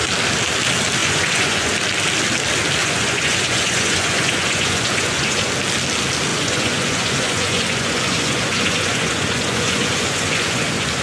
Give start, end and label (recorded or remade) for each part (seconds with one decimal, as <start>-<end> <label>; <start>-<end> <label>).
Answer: 0.0-1.0 recorded; 1.0-1.7 remade; 1.7-2.8 recorded; 2.8-5.5 remade; 5.5-6.3 recorded; 6.3-11.0 remade